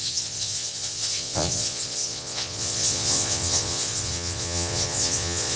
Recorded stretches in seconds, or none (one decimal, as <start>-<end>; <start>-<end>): none